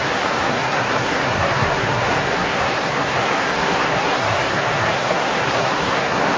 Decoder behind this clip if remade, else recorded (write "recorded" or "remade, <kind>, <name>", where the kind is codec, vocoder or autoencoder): remade, codec, SNAC